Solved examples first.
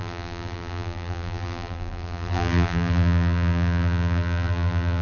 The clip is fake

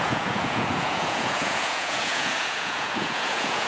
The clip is fake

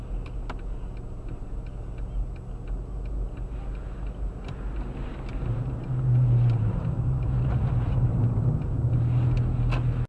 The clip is real